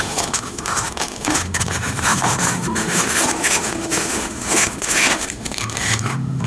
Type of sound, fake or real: fake